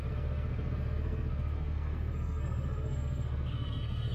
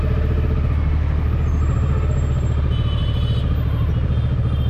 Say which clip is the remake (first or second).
first